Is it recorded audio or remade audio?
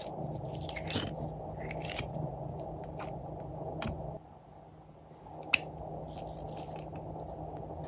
recorded